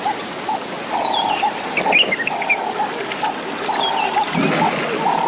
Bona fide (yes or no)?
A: yes